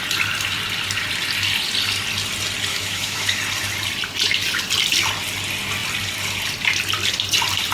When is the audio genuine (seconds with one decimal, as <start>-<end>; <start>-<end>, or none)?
0.0-2.7; 3.4-7.7